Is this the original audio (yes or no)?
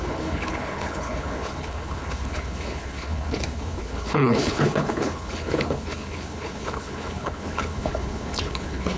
no